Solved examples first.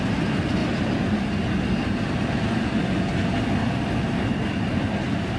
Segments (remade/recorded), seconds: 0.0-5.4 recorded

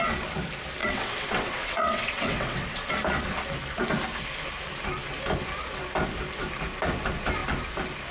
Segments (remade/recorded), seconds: 0.0-0.8 recorded; 0.8-2.9 remade; 2.9-8.1 recorded